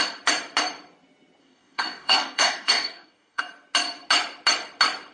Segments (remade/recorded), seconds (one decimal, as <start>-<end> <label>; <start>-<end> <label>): 0.0-1.4 recorded; 1.4-3.4 remade; 3.4-5.1 recorded